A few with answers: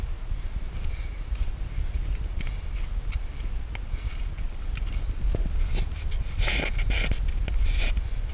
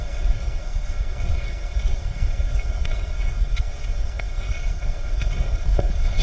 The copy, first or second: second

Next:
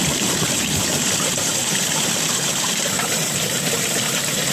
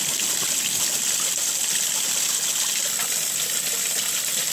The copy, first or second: first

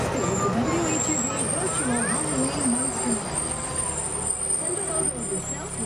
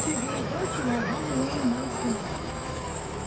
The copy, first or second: second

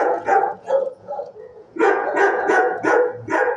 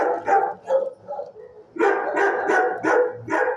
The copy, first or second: first